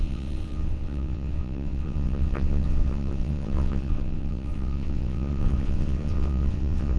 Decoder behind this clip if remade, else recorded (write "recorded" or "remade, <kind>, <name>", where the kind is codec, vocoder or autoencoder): remade, vocoder, WaveNeXt